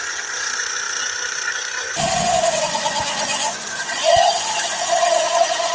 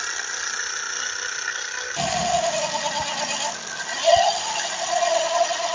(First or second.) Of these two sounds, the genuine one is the second